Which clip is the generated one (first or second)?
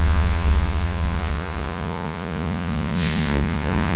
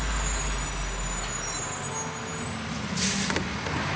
first